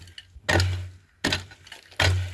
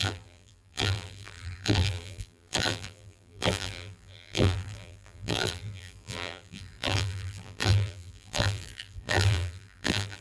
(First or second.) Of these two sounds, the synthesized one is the second